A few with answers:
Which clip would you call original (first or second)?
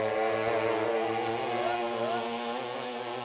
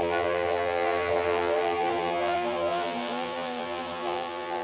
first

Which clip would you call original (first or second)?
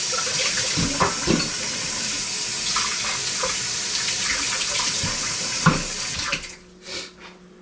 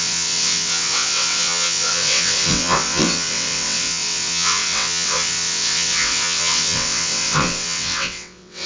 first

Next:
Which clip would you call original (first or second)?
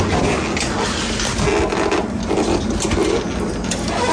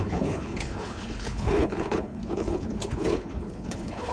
first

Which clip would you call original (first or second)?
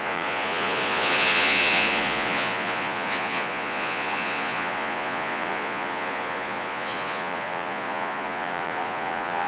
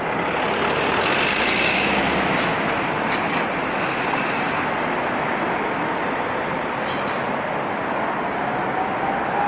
second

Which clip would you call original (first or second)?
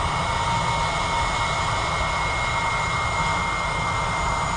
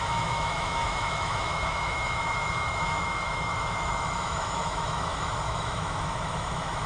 first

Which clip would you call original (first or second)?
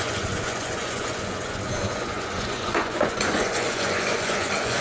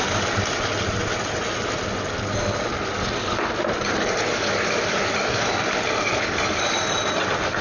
second